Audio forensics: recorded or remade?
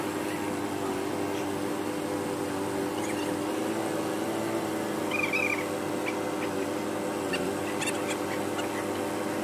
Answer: recorded